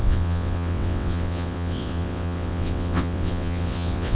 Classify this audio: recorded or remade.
remade